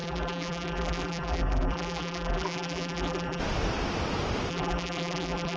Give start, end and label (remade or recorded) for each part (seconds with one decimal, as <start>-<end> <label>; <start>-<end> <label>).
0.0-3.4 remade; 3.4-4.5 recorded; 4.5-5.6 remade